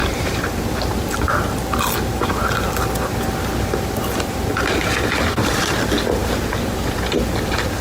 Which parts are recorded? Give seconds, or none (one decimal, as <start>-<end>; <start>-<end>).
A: 1.3-7.8